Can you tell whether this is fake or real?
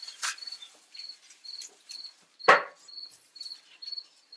fake